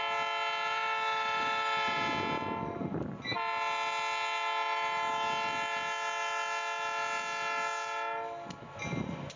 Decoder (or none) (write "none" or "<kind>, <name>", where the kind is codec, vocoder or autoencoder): none